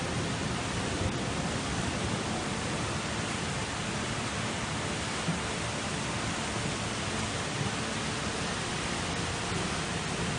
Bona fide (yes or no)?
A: no